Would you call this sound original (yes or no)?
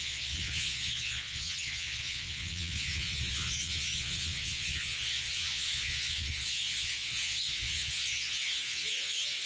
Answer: no